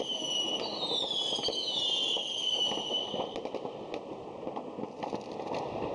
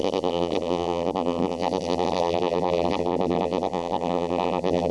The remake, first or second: second